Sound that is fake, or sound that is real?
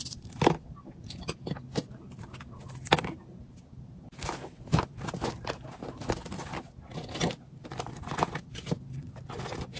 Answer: real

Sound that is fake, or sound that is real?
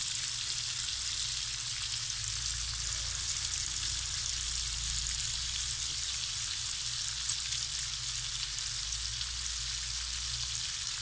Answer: real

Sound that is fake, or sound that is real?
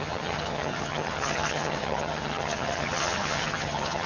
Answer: fake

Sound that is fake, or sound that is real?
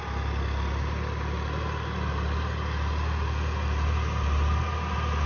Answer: real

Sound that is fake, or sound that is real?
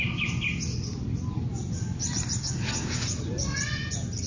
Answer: real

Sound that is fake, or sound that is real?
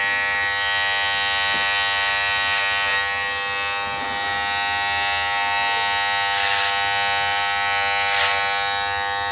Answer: real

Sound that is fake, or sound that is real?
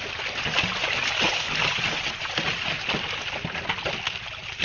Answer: real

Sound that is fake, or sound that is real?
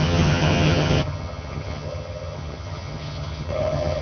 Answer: fake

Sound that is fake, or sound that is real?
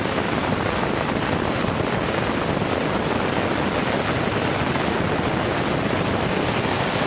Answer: real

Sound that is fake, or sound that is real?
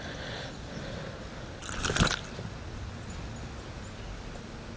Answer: real